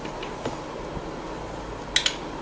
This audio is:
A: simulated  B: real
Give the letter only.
B